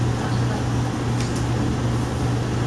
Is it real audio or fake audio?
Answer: real